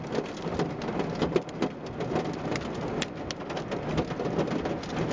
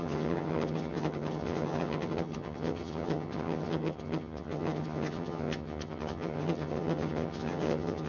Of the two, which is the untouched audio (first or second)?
first